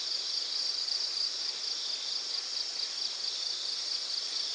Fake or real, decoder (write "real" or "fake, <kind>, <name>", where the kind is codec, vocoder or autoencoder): real